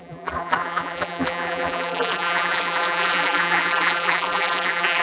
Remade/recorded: remade